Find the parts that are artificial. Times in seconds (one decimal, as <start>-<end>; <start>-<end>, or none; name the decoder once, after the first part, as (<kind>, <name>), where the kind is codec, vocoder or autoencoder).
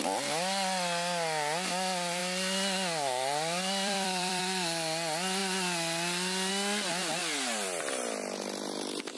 2.2-4.4 (vocoder, BigVGAN v2); 7.2-7.8